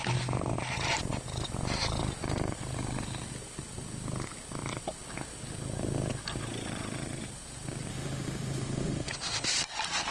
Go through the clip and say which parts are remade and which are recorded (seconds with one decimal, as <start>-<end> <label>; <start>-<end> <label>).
0.0-7.9 recorded; 7.9-9.1 remade; 9.1-10.1 recorded